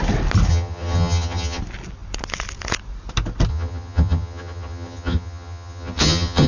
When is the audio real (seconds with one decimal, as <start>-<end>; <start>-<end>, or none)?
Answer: 0.0-0.5; 1.6-3.5

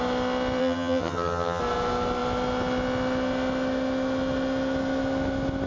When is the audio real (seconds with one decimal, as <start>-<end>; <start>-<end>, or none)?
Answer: 0.0-0.6; 1.6-5.7

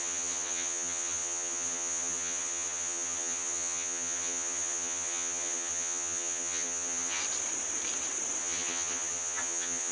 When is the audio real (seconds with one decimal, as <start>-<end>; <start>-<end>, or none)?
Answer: 7.2-8.4

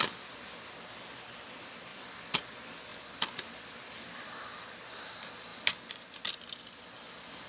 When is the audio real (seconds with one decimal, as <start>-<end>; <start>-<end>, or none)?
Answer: 0.0-7.5

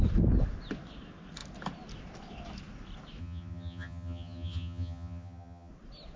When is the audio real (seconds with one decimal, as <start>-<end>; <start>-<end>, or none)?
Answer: 0.0-3.2; 5.7-6.2